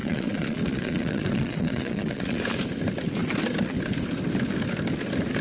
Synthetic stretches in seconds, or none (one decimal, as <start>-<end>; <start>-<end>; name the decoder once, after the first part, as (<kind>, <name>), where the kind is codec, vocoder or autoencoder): 0.0-2.4 (vocoder, Vocos)